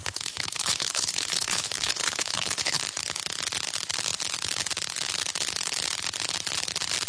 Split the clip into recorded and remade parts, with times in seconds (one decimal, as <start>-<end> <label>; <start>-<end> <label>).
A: 0.0-2.8 remade; 2.8-7.1 recorded